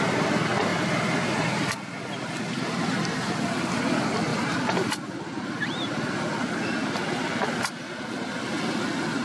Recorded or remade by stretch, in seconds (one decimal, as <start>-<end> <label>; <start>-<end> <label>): 0.0-4.3 recorded; 4.3-5.8 remade; 5.8-9.2 recorded